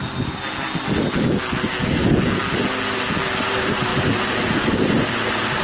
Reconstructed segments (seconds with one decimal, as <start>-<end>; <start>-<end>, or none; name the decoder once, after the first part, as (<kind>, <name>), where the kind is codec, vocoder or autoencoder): 3.4-5.6 (vocoder, BigVGAN v2)